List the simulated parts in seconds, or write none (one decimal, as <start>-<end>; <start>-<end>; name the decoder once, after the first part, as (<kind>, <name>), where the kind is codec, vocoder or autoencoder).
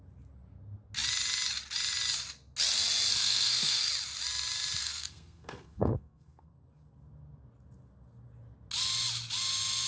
3.1-3.9 (codec, SNAC); 4.8-6.5